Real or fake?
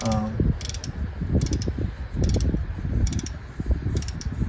real